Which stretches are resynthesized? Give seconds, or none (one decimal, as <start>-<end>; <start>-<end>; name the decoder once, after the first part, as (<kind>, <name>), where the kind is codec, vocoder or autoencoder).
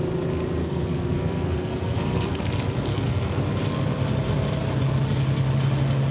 0.6-2.4 (codec, SNAC); 2.9-3.4